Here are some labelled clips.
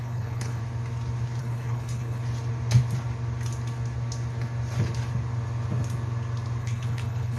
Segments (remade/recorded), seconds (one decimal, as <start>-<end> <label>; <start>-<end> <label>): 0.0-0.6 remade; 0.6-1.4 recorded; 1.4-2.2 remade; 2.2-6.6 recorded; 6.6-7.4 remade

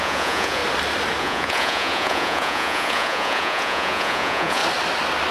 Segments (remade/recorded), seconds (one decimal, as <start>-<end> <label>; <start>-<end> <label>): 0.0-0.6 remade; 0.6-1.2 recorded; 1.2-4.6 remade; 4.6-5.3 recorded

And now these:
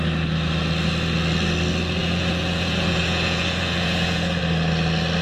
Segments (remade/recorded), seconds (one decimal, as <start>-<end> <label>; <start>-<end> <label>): 0.0-2.0 recorded; 2.0-4.4 remade; 4.4-5.2 recorded

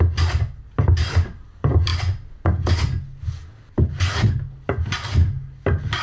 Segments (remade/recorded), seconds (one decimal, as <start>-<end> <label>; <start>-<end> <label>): 0.0-6.0 recorded

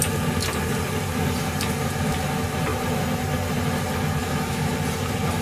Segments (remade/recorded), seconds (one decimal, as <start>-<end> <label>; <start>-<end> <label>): 0.0-4.2 recorded; 4.2-4.7 remade; 4.7-5.4 recorded

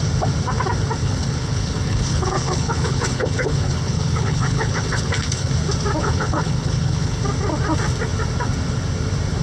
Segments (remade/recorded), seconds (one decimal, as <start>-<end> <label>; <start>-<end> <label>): 0.0-1.0 recorded; 1.0-5.5 remade; 5.5-6.0 recorded; 6.0-7.2 remade; 7.2-9.4 recorded

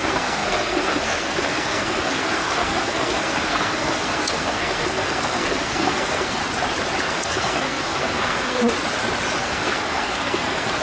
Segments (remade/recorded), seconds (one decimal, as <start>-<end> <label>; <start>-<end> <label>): 0.0-6.4 remade; 6.4-7.0 recorded; 7.0-8.6 remade; 8.6-9.4 recorded; 9.4-10.8 remade

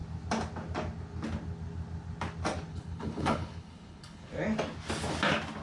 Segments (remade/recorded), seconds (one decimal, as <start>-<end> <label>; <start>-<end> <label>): 0.0-2.7 recorded; 2.7-4.3 remade; 4.3-5.6 recorded